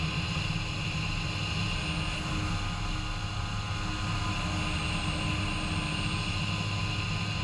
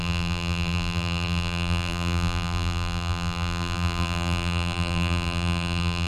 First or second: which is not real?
second